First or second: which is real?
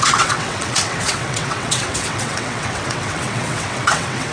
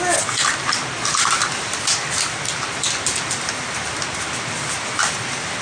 second